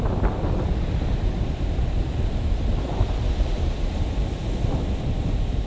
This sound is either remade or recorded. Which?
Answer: recorded